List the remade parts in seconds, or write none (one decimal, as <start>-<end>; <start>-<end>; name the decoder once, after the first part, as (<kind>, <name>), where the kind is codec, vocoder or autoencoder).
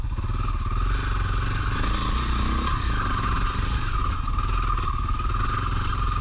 none